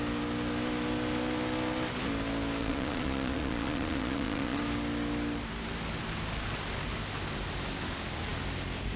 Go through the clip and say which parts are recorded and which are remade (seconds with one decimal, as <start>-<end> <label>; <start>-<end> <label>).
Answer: 0.0-2.6 recorded; 2.6-4.6 remade; 4.6-9.0 recorded